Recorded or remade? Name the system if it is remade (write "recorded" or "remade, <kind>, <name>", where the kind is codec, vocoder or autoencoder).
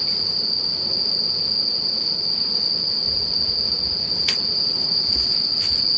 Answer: recorded